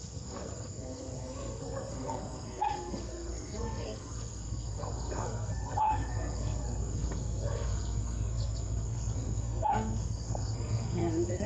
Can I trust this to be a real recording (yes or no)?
no